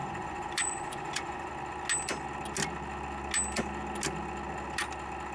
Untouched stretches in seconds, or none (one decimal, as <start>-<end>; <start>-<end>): 1.5-5.3